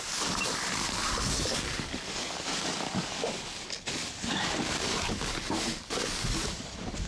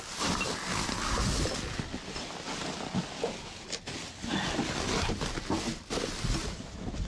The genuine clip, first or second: second